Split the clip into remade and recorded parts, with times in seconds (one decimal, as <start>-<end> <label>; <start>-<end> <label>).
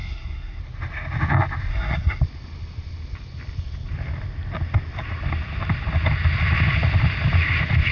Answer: 0.0-0.6 remade; 0.6-1.7 recorded; 1.7-2.2 remade; 2.2-7.9 recorded